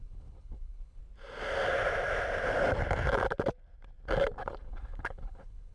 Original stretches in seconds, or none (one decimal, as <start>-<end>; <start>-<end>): 1.0-4.4